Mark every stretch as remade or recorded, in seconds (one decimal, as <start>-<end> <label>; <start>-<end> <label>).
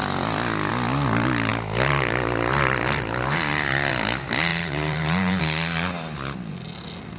0.0-4.5 recorded; 4.5-5.4 remade; 5.4-7.2 recorded